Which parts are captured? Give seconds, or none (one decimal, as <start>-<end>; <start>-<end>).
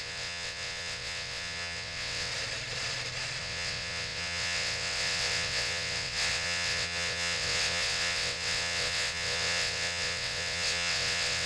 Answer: 2.3-3.4